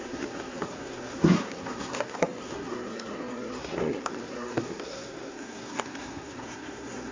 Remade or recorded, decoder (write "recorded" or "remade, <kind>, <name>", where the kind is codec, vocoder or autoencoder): remade, codec, SNAC